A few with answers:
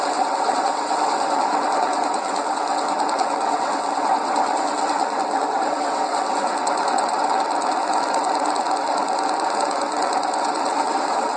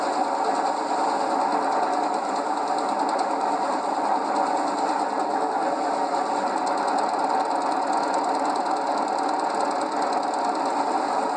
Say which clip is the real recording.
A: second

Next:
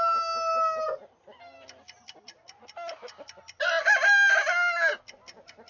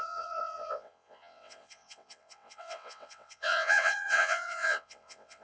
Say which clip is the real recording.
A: first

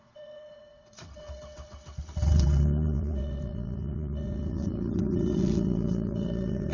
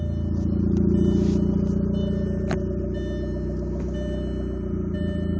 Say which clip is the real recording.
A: second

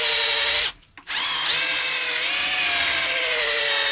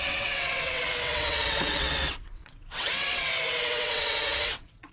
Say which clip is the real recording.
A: first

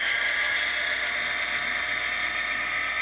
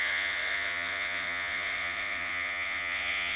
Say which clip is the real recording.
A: first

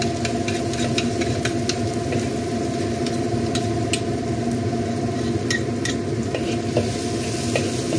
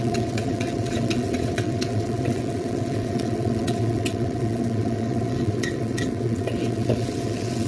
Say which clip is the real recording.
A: first